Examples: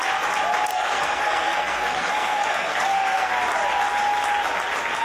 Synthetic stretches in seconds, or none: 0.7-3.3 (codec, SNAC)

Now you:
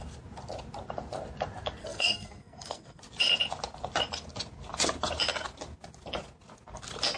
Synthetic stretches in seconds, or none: 1.8-3.0 (codec, SNAC)

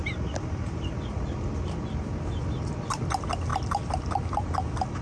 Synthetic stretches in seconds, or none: none